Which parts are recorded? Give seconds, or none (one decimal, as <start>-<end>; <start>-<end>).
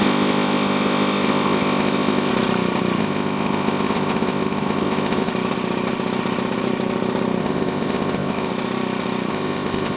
2.3-3.0; 5.3-7.4; 8.5-9.3